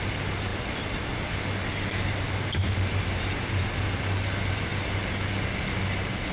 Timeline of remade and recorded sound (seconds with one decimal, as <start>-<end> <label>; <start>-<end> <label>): 0.0-0.5 recorded; 0.5-1.3 remade; 1.3-6.3 recorded

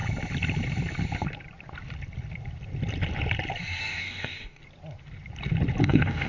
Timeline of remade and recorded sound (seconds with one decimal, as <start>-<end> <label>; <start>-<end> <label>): 0.0-3.8 recorded; 3.8-4.6 remade; 4.6-5.8 recorded; 5.8-6.3 remade

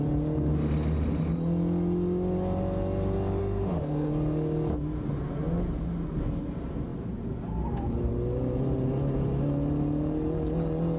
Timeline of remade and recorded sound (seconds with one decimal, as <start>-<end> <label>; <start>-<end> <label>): 0.0-3.4 recorded; 3.4-4.1 remade; 4.1-11.0 recorded

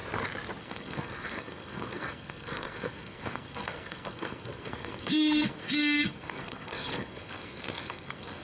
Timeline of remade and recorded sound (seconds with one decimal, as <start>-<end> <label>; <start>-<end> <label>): 0.0-0.6 recorded; 0.6-8.4 remade

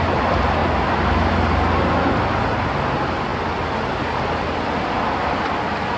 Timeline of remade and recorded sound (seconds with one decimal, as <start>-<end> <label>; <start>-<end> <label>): 0.0-6.0 recorded

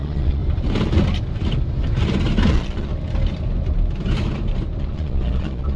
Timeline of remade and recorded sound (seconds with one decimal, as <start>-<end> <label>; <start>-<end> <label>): 0.0-0.4 remade; 0.4-2.5 recorded; 2.5-2.9 remade; 2.9-4.8 recorded; 4.8-5.8 remade

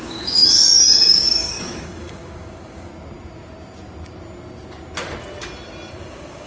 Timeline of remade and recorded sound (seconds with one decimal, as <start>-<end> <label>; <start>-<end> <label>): 0.0-2.9 remade; 2.9-5.9 recorded; 5.9-6.5 remade

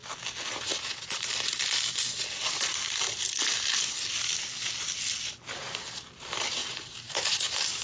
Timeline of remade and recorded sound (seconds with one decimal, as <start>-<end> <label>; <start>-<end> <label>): 0.0-6.6 recorded; 6.6-7.2 remade; 7.2-7.8 recorded